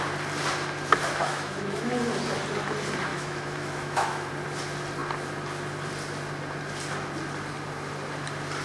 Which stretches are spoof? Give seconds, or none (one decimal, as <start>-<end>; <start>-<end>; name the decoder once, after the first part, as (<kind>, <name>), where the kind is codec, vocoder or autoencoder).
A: 1.2-1.9 (autoencoder, DAC-VAE); 3.1-4.3